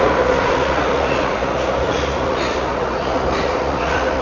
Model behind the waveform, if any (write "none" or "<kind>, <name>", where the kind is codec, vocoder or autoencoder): vocoder, Vocos